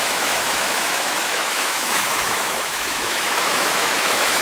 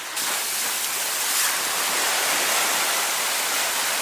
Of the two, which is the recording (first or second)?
second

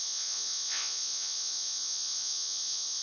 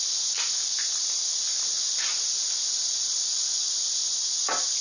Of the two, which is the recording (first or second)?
second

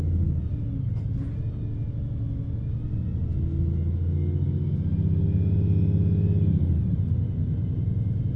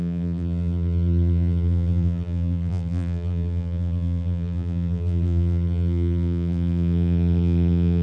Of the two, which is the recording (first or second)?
first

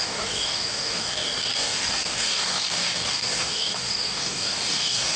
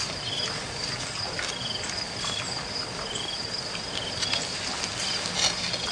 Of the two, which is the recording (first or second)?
second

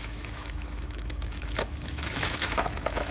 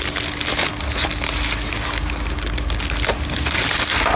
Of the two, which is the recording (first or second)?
second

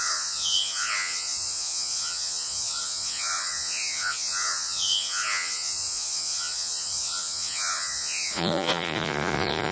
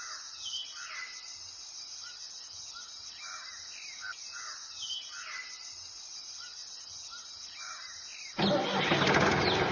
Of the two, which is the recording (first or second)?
second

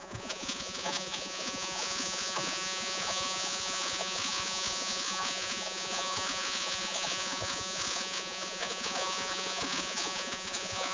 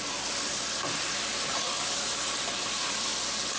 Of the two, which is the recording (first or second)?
second